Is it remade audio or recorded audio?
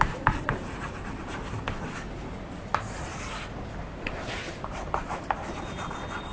recorded